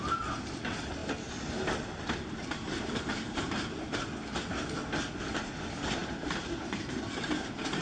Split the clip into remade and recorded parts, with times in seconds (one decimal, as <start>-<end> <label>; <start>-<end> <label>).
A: 0.0-6.0 recorded; 6.0-7.8 remade